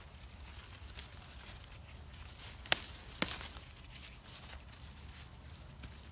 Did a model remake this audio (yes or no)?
no